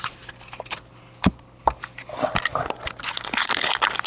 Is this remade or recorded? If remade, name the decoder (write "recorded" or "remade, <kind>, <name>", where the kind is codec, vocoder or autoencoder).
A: recorded